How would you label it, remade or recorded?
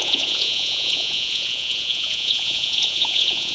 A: remade